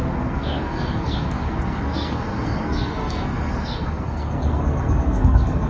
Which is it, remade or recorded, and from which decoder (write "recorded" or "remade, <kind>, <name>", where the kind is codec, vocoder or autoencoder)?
remade, codec, SNAC